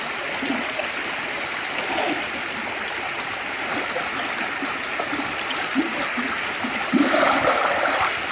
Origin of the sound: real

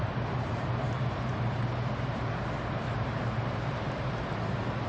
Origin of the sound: fake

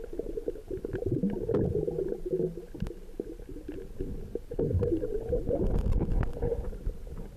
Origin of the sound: real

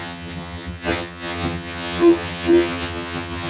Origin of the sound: fake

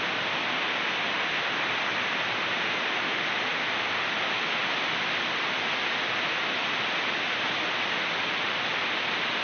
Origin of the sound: real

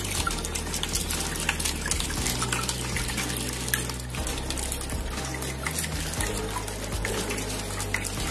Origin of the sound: real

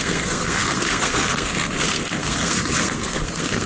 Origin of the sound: fake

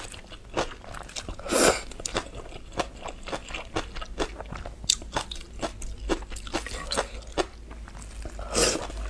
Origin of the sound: real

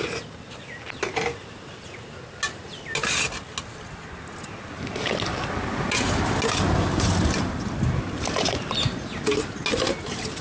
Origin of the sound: real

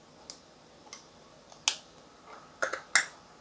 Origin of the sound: real